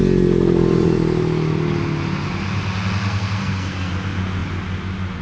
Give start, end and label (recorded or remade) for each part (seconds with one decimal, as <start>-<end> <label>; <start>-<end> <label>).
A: 0.0-3.0 recorded; 3.0-3.9 remade; 3.9-5.2 recorded